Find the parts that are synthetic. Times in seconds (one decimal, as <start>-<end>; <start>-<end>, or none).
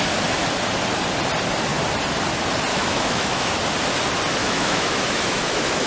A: 2.7-3.5; 4.4-5.9